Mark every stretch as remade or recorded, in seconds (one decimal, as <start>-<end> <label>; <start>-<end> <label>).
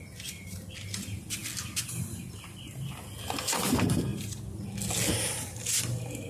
0.0-6.3 recorded